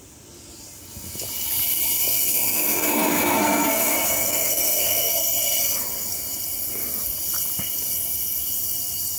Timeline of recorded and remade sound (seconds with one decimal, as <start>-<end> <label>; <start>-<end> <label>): 0.0-2.0 recorded; 2.0-5.1 remade; 5.1-9.2 recorded